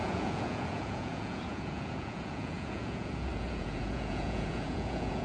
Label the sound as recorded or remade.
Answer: remade